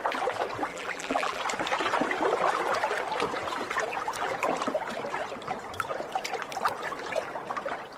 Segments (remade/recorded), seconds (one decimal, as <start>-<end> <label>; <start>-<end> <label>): 0.0-0.7 recorded; 0.7-1.4 remade; 1.4-8.0 recorded